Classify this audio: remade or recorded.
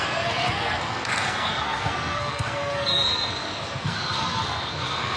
remade